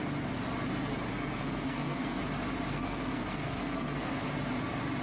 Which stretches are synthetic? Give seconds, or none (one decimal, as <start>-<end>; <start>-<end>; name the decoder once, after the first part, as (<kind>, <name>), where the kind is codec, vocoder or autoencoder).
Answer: 1.1-2.2 (codec, SNAC); 2.7-4.1